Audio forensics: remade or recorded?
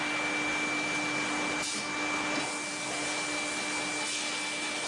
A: recorded